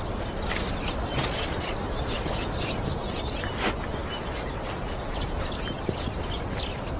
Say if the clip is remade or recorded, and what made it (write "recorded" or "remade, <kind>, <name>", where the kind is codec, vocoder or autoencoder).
recorded